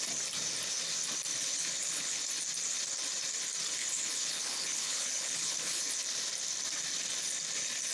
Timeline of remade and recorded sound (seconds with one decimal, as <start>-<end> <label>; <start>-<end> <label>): 0.0-1.3 recorded; 1.3-2.3 remade; 2.3-3.8 recorded; 3.8-5.9 remade; 5.9-7.9 recorded